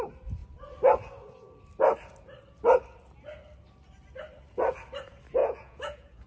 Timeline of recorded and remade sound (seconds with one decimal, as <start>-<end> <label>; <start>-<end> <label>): 0.0-5.4 recorded; 5.4-6.3 remade